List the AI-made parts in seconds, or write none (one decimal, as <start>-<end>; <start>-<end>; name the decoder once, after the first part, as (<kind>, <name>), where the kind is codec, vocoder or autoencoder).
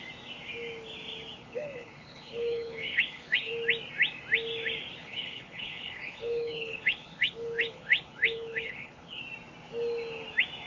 1.4-3.5 (codec, HILCodec); 5.0-9.2